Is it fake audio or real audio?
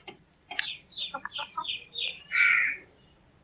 fake